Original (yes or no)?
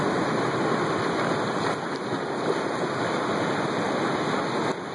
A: yes